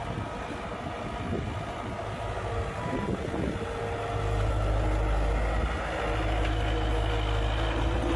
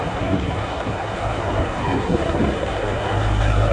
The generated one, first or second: second